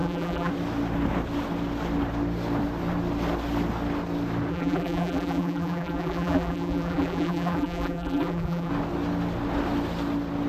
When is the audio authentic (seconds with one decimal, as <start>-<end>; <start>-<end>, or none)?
0.5-4.5; 8.7-10.5